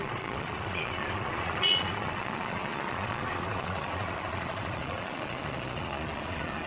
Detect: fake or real fake